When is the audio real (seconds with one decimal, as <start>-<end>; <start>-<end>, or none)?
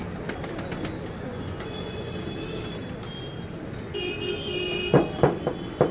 0.0-1.3; 2.1-5.9